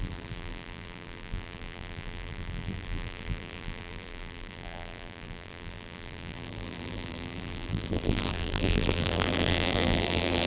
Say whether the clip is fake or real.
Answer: fake